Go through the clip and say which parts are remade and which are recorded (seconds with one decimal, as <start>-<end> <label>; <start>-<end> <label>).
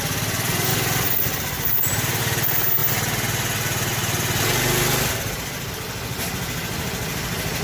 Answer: 0.0-0.7 recorded; 0.7-2.2 remade; 2.2-7.6 recorded